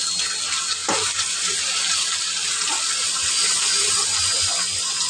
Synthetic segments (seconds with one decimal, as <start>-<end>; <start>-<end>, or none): none